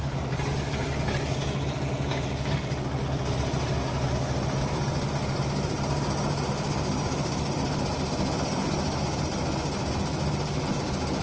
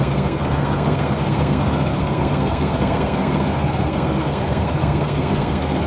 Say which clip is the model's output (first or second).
second